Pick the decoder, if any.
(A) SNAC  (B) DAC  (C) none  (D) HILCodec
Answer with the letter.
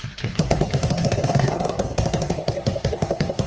A